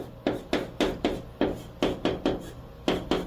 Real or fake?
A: real